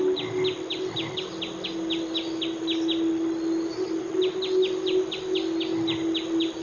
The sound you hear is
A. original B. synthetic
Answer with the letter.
A